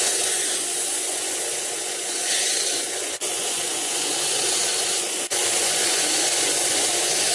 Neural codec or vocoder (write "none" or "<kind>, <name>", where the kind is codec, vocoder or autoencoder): vocoder, Vocos